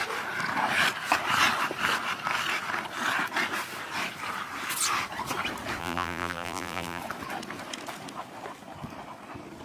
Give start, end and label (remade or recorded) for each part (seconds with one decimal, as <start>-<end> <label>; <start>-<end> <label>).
0.0-5.8 recorded; 5.8-7.0 remade; 7.0-9.6 recorded